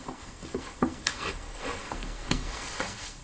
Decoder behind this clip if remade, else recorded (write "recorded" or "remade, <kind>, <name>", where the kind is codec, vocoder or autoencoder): remade, codec, SNAC